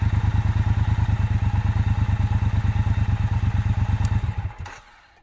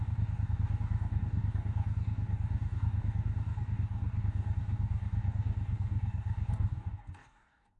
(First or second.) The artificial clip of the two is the second